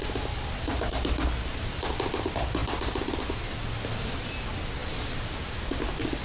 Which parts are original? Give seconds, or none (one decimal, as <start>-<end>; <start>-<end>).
0.0-6.2